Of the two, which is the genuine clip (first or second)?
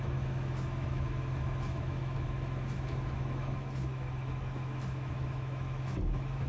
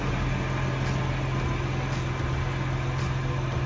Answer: second